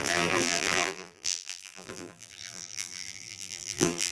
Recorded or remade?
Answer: remade